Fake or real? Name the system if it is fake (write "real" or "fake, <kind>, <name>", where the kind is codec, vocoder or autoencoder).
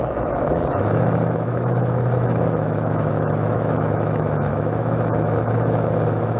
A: fake, autoencoder, DAC-VAE